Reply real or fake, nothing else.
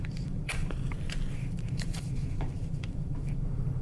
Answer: fake